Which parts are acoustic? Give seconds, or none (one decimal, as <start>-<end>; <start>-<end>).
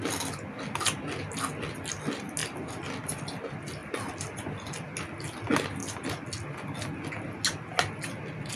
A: 0.0-2.4; 3.2-3.8; 4.6-5.8; 7.1-8.6